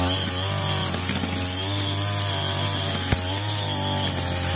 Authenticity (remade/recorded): recorded